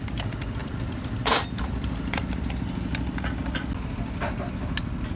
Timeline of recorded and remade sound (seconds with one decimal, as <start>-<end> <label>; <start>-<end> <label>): 0.0-0.6 recorded; 0.6-2.3 remade; 2.3-5.2 recorded